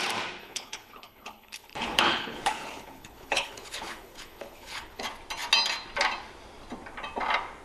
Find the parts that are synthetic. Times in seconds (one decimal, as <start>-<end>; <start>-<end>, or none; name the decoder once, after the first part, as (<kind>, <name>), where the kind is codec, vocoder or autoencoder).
0.4-5.0 (codec, HILCodec)